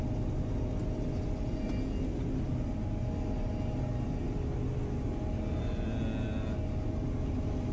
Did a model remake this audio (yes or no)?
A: no